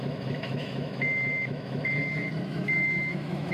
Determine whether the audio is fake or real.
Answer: fake